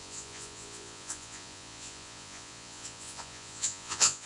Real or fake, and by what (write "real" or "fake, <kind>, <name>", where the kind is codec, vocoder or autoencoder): fake, vocoder, Vocos